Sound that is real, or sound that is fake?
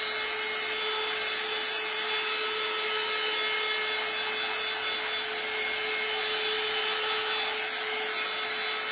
real